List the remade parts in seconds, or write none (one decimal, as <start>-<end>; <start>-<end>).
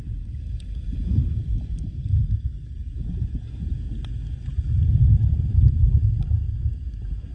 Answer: 2.8-3.9